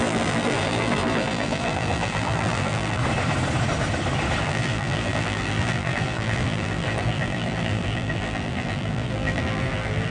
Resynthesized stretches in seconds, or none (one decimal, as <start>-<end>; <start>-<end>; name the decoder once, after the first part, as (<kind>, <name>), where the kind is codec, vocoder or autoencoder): 0.0-3.0 (vocoder, BigVGAN v2); 4.4-10.1